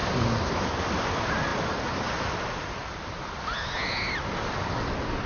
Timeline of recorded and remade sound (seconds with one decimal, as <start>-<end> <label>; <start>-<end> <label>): 0.0-0.5 remade; 0.5-5.3 recorded